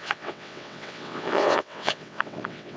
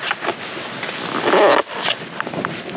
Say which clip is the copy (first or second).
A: first